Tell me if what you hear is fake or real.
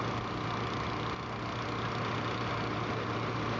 real